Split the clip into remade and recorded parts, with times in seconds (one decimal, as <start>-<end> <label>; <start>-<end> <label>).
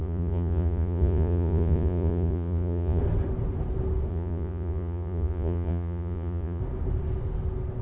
0.0-3.0 remade; 3.0-4.1 recorded; 4.1-6.6 remade; 6.6-7.8 recorded